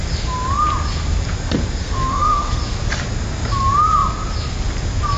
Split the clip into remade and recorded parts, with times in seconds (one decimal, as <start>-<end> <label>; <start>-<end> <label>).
0.0-1.8 recorded; 1.8-2.6 remade; 2.6-5.2 recorded